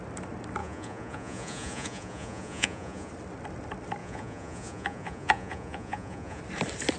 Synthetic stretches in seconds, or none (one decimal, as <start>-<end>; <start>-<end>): 0.6-3.1; 4.0-6.4